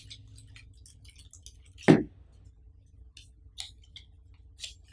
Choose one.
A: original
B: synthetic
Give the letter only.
A